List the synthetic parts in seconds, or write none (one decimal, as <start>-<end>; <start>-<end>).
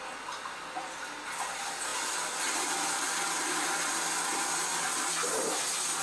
none